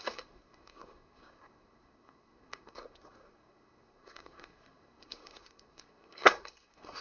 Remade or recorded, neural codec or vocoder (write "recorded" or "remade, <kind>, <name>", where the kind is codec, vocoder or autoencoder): remade, codec, SNAC